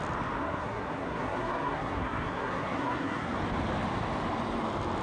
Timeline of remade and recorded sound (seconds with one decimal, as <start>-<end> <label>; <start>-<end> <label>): 0.0-0.4 recorded; 0.4-3.4 remade; 3.4-5.0 recorded